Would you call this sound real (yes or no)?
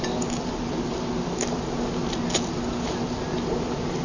yes